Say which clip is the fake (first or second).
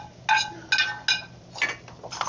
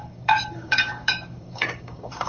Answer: second